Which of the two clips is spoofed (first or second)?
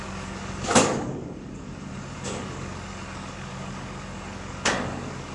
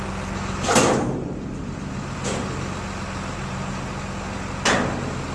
first